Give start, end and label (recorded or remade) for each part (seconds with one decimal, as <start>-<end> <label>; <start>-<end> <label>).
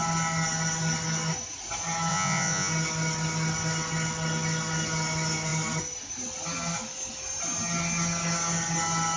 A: 0.0-2.1 recorded; 2.1-2.7 remade; 2.7-9.2 recorded